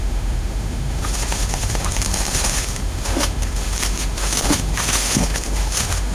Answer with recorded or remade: remade